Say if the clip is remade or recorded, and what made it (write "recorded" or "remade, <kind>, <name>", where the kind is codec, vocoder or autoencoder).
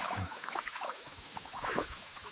remade, autoencoder, DAC-VAE